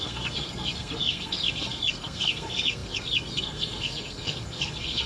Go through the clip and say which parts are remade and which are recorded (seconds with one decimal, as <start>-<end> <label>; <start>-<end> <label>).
0.0-5.1 remade